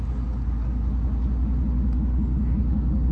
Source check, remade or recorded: recorded